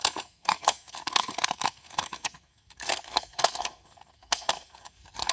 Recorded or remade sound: remade